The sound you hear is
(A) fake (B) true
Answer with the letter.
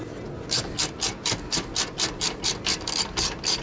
B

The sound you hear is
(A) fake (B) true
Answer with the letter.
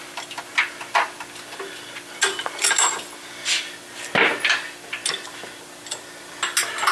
B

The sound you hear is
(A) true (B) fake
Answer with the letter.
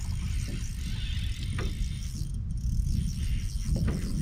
A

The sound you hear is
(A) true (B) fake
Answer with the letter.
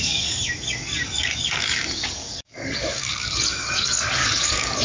B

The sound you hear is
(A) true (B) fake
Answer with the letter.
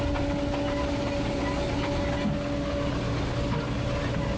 A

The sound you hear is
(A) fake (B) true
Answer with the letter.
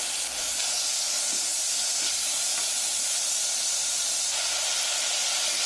B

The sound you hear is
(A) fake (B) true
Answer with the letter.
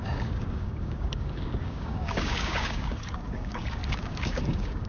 A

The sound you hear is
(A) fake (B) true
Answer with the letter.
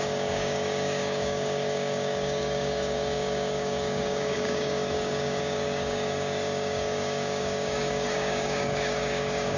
A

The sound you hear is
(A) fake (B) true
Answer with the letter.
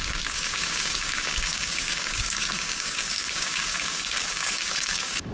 A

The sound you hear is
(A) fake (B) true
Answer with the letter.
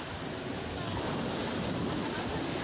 B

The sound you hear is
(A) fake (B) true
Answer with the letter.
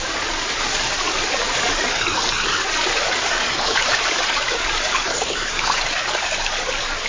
A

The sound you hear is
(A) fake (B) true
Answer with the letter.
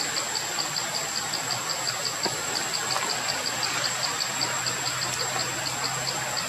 B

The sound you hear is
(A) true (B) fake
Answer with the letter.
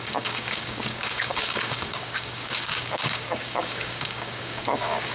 B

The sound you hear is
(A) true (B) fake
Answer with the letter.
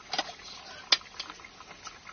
A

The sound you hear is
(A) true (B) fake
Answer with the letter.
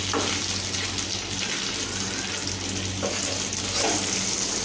A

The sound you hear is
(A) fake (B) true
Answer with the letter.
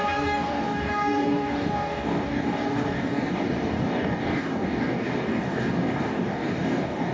A